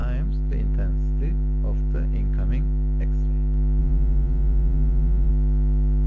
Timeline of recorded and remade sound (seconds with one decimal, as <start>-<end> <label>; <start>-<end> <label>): 0.0-3.8 recorded; 3.8-5.3 remade; 5.3-6.1 recorded